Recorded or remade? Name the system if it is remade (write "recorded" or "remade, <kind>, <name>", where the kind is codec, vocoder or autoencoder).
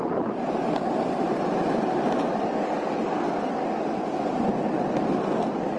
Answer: recorded